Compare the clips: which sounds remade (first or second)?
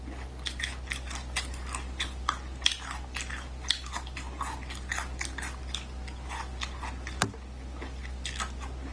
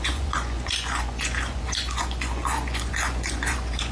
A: second